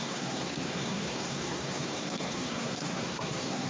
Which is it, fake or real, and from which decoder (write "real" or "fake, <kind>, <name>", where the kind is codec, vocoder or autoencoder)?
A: fake, codec, SNAC